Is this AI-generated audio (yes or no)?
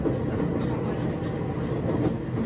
no